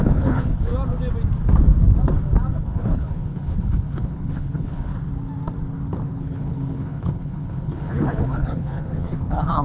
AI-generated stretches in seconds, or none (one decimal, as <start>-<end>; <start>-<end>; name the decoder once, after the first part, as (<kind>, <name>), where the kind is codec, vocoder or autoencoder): 0.0-0.7 (codec, HILCodec); 2.5-4.9; 6.2-9.6